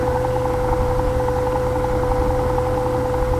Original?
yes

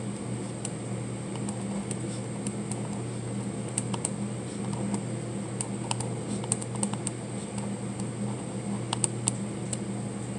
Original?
yes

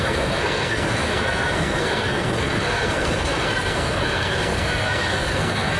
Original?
no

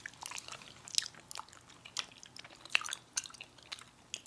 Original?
yes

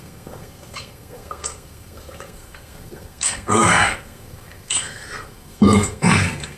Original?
no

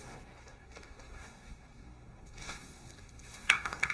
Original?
no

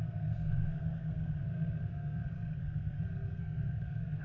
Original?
no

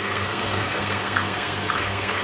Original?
no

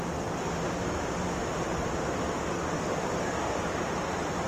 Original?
yes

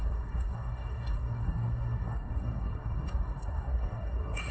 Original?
no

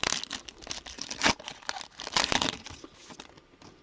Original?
yes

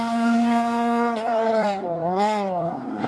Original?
no